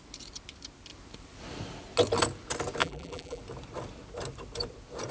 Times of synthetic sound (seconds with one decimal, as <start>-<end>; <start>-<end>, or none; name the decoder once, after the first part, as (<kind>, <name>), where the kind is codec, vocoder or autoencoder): 2.8-3.4 (vocoder, BigVGAN v2)